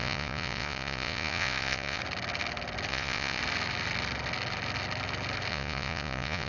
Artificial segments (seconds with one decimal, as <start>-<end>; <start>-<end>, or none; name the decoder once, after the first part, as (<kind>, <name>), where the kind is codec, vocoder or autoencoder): 0.0-2.0 (vocoder, Vocos); 2.9-3.4; 5.5-6.5